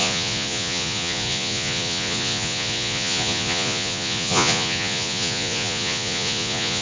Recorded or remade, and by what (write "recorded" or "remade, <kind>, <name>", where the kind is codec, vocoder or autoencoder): remade, vocoder, Vocos